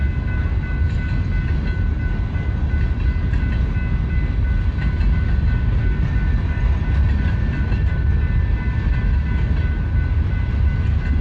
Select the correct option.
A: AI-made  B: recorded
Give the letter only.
B